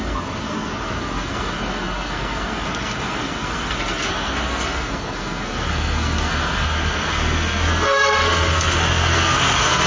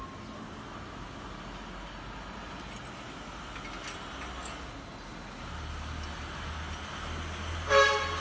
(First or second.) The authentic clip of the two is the second